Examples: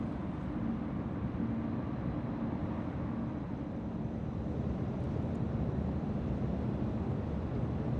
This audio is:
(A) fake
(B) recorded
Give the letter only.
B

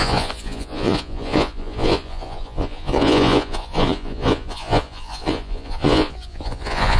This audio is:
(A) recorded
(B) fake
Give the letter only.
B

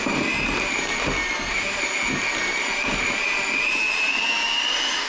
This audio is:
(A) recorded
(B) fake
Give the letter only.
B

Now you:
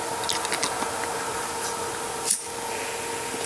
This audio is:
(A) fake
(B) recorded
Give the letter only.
B